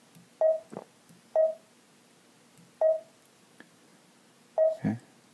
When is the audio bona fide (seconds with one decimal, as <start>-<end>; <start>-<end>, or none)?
0.0-5.3